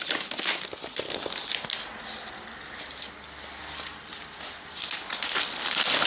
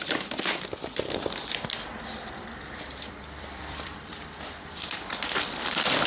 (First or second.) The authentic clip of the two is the first